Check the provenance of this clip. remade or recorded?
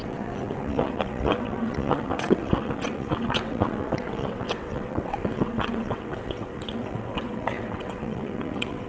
remade